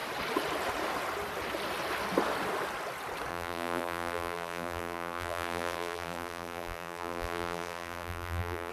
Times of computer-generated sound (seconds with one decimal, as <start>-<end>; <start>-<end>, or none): 3.3-8.7